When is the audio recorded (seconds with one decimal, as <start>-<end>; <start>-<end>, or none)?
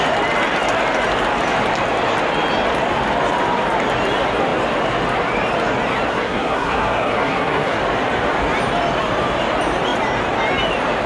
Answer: 0.0-6.1; 7.8-11.1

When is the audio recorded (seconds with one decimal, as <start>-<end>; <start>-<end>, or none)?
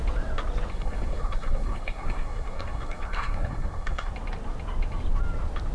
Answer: 0.0-0.7; 4.1-5.7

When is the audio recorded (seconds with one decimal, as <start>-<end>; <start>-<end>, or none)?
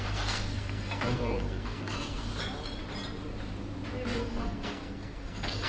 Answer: 2.3-4.2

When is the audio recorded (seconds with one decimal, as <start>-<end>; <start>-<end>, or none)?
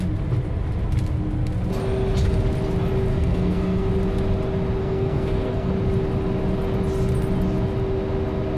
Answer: 0.0-3.1; 3.9-4.8; 5.7-8.6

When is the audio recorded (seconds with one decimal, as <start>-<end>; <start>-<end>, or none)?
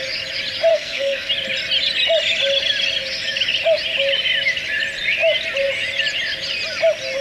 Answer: 0.0-0.7; 1.3-7.2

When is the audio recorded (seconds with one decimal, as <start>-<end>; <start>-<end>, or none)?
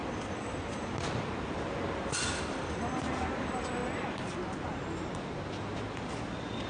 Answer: 0.0-6.7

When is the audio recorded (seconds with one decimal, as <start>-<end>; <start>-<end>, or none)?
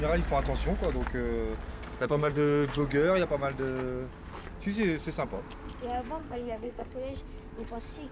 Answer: 0.0-1.7; 2.8-6.2; 6.9-8.1